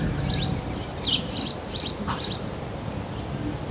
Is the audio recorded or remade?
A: recorded